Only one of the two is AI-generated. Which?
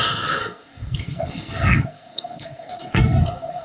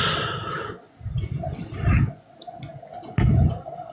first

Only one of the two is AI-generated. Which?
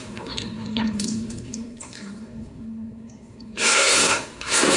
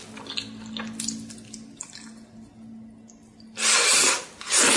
first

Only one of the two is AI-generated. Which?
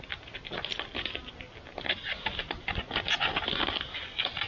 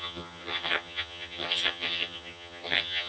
second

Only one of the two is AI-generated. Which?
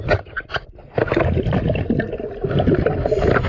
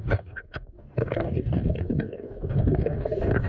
second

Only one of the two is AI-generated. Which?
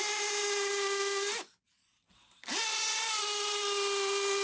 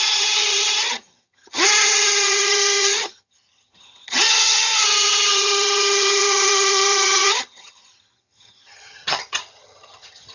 second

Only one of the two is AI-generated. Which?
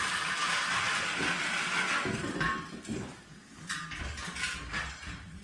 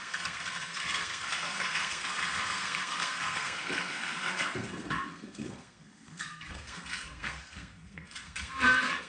second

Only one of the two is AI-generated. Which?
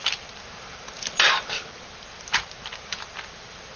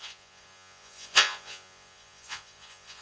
second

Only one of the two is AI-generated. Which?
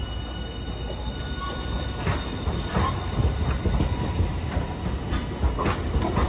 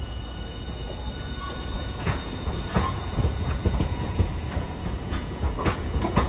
second